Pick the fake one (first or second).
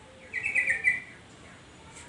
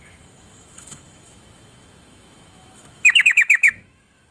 second